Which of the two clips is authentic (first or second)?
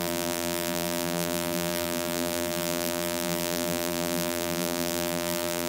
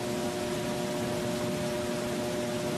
second